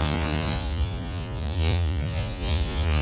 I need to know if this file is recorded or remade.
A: remade